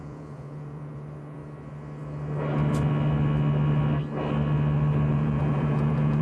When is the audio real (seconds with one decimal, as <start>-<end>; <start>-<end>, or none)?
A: 1.4-5.1